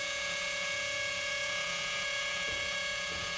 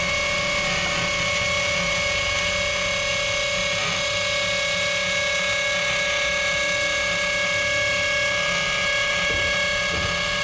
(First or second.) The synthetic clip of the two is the first